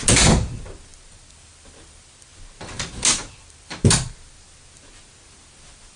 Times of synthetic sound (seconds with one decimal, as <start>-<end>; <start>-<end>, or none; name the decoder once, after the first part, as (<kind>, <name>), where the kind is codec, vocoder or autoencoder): none